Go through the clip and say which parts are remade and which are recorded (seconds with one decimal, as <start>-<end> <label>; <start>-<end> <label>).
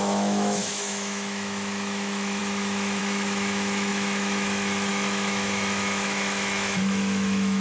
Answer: 0.0-7.6 remade